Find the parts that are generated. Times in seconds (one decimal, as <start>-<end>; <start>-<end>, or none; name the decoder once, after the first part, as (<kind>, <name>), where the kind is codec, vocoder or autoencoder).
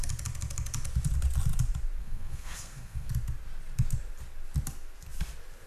2.0-3.1 (codec, SNAC)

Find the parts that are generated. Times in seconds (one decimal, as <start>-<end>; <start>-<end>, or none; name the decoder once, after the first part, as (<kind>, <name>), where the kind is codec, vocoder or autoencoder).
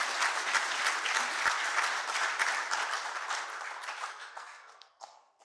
4.1-5.4 (codec, SNAC)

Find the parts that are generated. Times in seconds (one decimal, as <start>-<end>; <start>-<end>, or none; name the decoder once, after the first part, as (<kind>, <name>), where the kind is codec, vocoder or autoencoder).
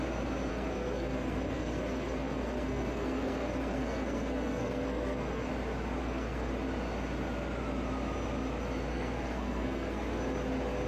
0.5-5.5 (codec, SNAC); 6.0-6.5; 8.9-10.2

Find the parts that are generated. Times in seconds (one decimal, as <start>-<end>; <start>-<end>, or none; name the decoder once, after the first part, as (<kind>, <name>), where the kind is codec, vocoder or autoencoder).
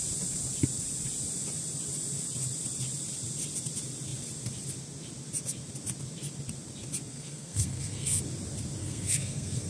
7.1-8.2 (codec, SNAC); 8.8-9.7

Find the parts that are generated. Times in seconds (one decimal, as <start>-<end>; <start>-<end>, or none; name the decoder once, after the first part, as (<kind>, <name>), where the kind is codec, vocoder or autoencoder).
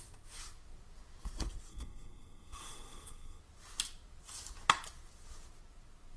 1.7-3.4 (codec, SNAC)